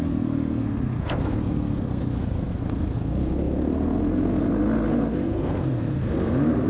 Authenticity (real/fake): fake